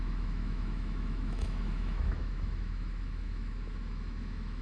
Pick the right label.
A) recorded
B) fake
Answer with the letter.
B